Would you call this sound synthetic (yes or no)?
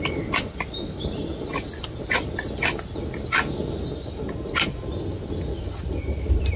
no